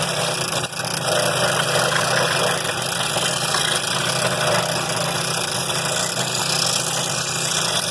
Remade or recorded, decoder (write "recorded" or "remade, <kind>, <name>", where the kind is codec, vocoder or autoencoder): recorded